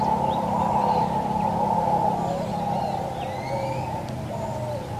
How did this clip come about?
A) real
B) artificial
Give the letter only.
A